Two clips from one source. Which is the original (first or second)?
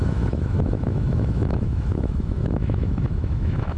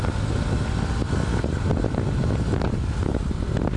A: second